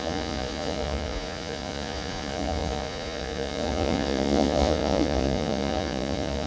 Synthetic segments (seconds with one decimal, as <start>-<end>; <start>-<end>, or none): 0.0-6.5